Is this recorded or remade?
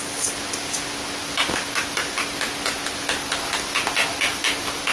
recorded